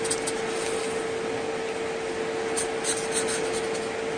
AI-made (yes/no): no